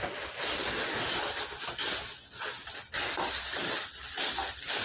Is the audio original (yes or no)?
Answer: yes